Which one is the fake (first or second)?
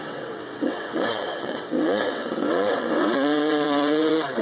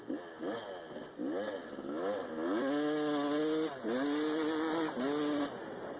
first